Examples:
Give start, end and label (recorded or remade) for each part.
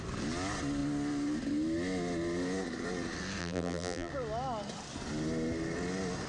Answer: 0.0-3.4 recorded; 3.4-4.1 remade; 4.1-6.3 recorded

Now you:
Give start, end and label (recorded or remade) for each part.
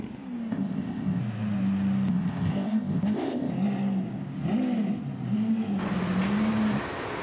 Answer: 0.0-0.5 recorded; 0.5-1.2 remade; 1.2-2.1 recorded; 2.1-3.5 remade; 3.5-7.2 recorded